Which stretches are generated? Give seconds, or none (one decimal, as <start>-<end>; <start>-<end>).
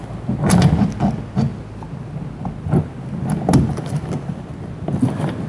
none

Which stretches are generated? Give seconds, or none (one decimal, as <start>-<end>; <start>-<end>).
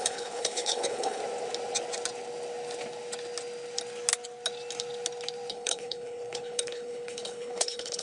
0.0-1.2; 5.5-8.0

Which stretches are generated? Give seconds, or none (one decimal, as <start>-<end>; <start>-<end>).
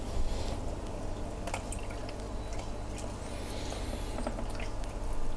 none